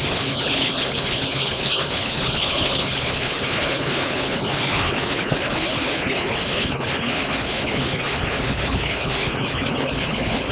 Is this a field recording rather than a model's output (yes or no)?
no